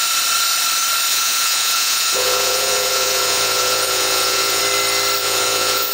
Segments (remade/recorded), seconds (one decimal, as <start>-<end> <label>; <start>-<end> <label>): 0.0-1.1 recorded; 1.1-4.6 remade; 4.6-5.2 recorded; 5.2-5.9 remade

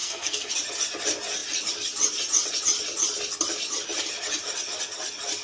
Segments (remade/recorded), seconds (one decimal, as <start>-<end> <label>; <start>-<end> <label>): 0.0-0.5 remade; 0.5-5.4 recorded

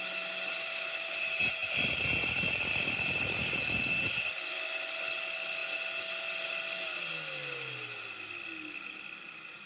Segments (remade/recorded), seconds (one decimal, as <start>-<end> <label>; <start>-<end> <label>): 0.0-0.6 recorded; 0.6-1.1 remade; 1.1-9.7 recorded

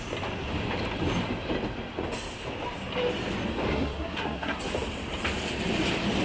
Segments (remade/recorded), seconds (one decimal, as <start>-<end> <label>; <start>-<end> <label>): 0.0-3.7 recorded; 3.7-4.6 remade; 4.6-6.2 recorded